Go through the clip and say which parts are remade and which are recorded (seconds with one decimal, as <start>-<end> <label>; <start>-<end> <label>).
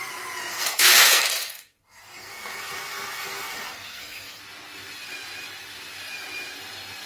0.0-0.5 recorded; 0.5-4.4 remade; 4.4-7.1 recorded